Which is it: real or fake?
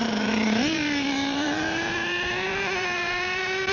fake